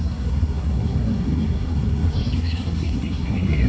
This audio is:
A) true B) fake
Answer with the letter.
B